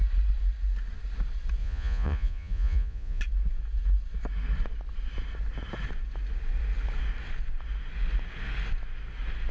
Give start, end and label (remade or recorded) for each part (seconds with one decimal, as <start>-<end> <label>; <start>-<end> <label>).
0.0-1.6 recorded; 1.6-3.2 remade; 3.2-9.5 recorded